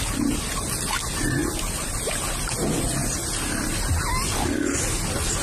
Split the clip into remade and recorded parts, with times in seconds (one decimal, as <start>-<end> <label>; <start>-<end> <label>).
0.0-5.4 recorded